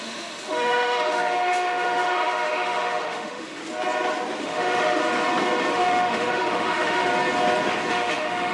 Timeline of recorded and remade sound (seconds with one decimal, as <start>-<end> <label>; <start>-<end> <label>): 0.0-3.6 remade; 3.6-4.4 recorded; 4.4-5.0 remade; 5.0-5.7 recorded; 5.7-7.1 remade; 7.1-7.9 recorded; 7.9-8.5 remade